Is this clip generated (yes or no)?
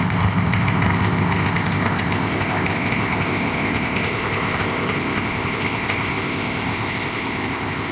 yes